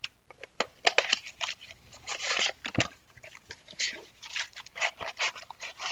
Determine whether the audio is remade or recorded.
remade